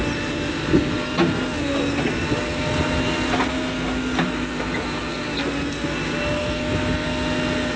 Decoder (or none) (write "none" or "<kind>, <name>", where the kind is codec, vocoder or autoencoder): none